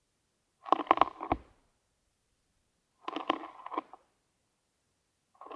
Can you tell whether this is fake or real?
real